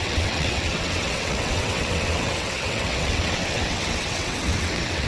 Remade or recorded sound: remade